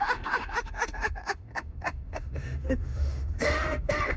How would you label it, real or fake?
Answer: fake